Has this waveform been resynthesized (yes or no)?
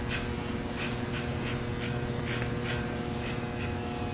no